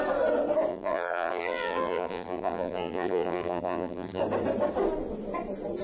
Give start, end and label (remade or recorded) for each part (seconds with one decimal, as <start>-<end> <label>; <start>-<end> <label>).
0.0-0.7 recorded; 0.7-4.2 remade; 4.2-5.8 recorded